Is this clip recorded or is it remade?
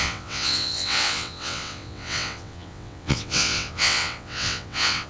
remade